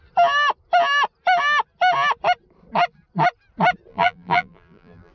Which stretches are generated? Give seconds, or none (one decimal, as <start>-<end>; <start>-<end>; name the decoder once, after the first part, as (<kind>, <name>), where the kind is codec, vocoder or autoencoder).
3.9-5.1 (vocoder, BigVGAN v2)